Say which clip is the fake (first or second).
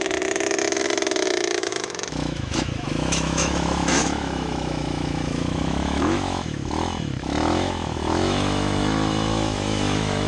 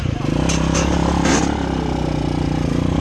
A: first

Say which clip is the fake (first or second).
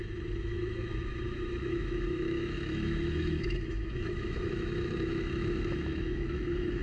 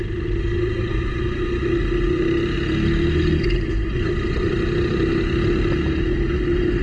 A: first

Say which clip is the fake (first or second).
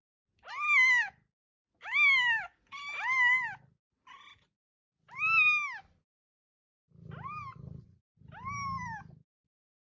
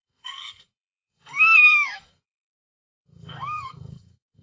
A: second